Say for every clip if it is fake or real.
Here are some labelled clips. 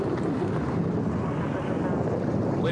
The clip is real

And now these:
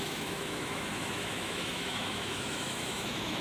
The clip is fake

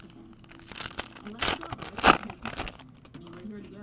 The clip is real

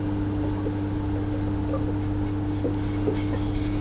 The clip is real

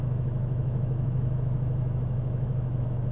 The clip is fake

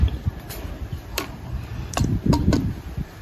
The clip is fake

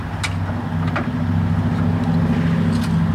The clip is real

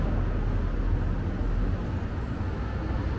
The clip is real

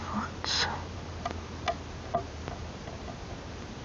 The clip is real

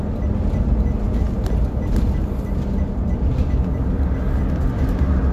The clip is real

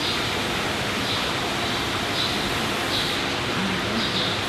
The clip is real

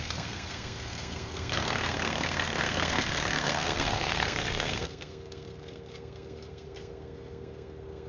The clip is fake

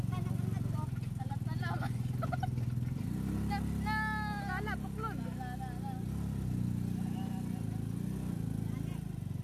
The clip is real